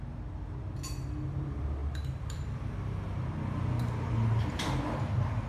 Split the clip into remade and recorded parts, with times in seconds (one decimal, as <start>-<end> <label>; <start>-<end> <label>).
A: 0.0-1.8 recorded; 1.8-2.6 remade; 2.6-5.5 recorded